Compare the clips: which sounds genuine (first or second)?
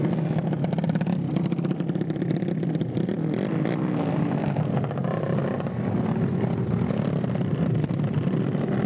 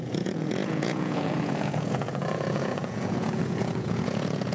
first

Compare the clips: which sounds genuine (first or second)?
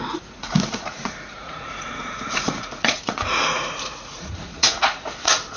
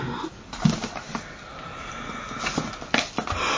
second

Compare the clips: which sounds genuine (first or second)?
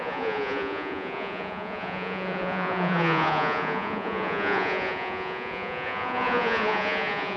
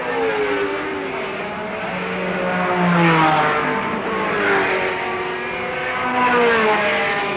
second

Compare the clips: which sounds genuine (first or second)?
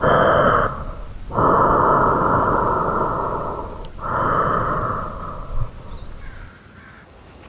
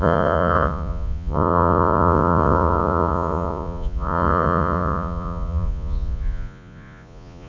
first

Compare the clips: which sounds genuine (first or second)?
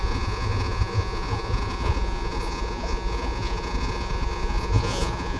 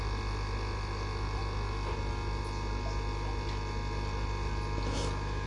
second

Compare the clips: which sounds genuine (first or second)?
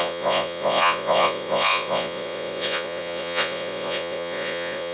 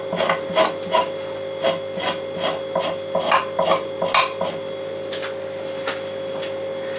second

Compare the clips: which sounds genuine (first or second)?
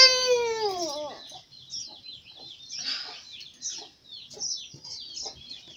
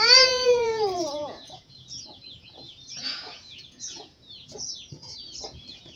first